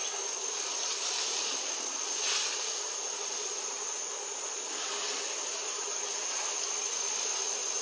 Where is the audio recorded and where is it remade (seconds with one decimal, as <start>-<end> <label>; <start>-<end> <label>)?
0.0-7.8 recorded